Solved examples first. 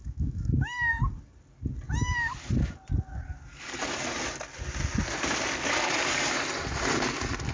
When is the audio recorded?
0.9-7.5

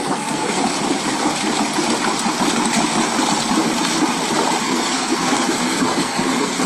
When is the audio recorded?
0.6-4.6

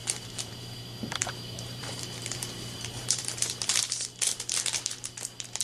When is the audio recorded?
0.5-1.2; 3.8-5.6